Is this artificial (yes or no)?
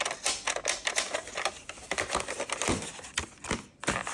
no